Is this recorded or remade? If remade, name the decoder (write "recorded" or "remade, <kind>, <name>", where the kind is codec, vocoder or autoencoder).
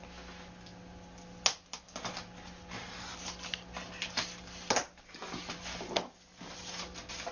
recorded